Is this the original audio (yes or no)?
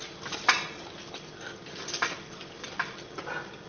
yes